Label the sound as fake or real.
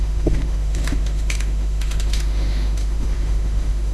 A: fake